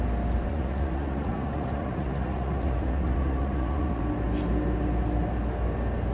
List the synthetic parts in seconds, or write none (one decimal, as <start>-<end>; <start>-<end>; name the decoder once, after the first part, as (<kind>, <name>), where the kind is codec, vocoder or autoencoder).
0.5-4.0 (vocoder, Vocos)